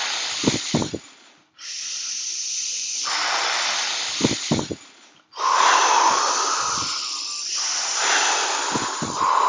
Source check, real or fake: real